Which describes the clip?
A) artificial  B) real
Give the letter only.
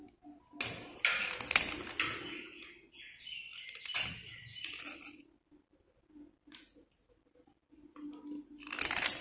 B